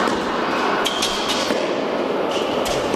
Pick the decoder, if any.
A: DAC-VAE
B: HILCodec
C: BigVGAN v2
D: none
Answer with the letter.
D